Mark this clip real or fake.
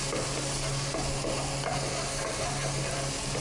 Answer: real